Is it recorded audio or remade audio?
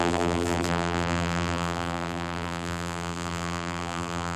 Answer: remade